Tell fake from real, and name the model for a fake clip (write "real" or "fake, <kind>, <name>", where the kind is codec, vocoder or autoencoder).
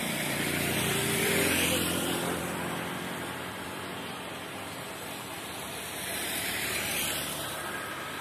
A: fake, vocoder, BigVGAN v2